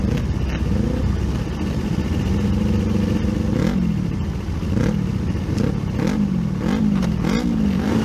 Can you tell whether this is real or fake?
real